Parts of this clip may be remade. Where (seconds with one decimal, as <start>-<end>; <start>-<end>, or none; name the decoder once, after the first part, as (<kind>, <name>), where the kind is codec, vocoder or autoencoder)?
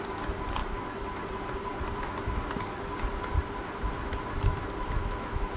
0.6-1.2 (autoencoder, DAC-VAE); 5.0-5.6